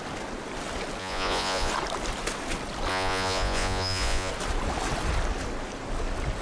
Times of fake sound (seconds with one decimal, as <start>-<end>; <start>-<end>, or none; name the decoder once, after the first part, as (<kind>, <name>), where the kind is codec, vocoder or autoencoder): 1.0-1.7 (vocoder, Vocos); 2.9-4.3